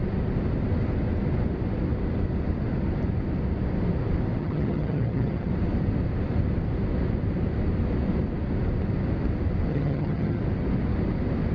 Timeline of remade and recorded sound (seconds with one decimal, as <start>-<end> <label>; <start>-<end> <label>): 0.0-4.4 recorded; 4.4-5.5 remade; 5.5-9.7 recorded; 9.7-10.4 remade; 10.4-11.5 recorded